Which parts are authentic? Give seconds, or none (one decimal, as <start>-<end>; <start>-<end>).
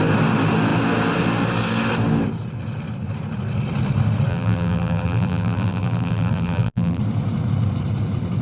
0.0-4.3; 7.0-8.4